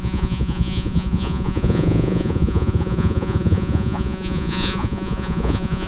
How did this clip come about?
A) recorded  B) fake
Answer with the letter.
B